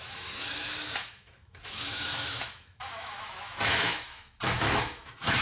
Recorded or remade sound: remade